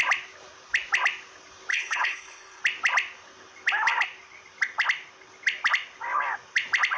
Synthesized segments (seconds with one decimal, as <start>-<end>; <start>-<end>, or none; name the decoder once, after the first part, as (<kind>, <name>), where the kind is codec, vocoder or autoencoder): 1.7-2.6 (codec, HILCodec)